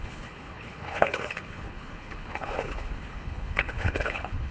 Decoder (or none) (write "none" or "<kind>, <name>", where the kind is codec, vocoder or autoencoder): codec, HILCodec